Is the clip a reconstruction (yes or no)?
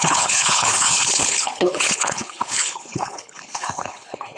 yes